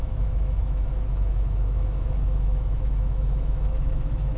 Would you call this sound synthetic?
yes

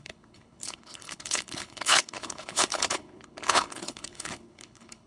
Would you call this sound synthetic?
yes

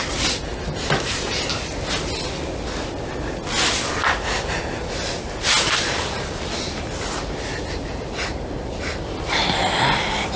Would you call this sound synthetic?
no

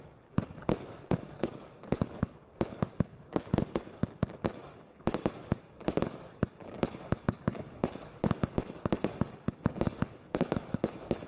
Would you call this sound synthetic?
yes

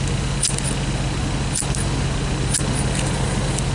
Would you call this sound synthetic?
no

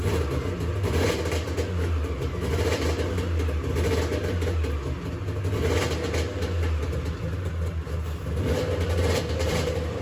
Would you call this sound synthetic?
no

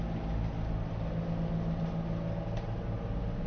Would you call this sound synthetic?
no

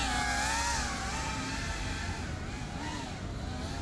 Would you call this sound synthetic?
no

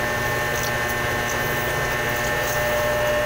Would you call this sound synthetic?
no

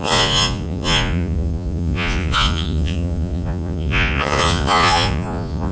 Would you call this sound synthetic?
yes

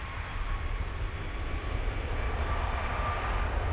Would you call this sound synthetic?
no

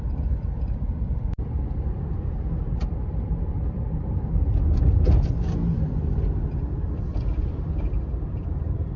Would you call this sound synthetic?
yes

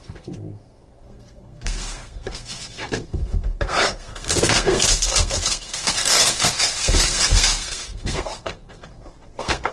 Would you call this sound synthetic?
yes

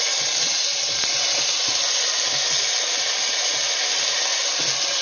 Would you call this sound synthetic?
no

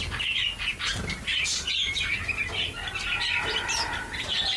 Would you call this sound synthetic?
no